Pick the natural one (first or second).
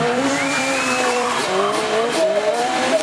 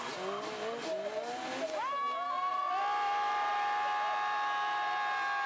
second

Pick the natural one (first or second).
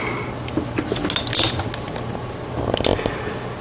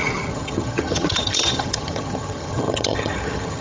first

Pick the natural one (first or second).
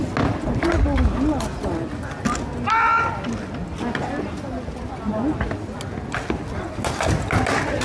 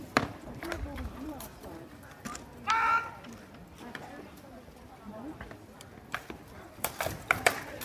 first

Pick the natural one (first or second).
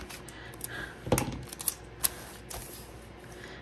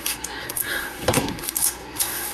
first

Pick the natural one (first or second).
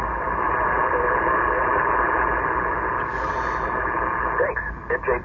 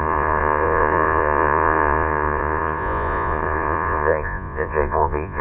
first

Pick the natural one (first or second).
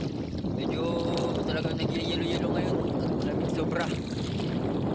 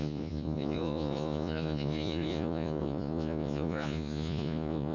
first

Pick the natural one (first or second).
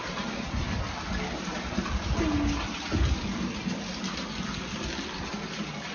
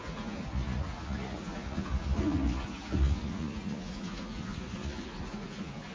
first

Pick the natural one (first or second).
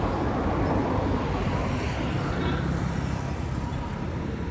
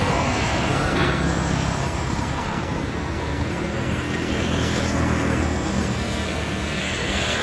first